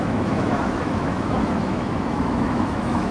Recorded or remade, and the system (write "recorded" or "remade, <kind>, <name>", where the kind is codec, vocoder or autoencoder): remade, autoencoder, DAC-VAE